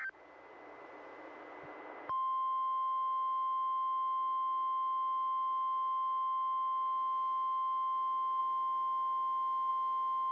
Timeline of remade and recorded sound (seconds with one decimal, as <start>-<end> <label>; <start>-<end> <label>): 0.0-10.3 recorded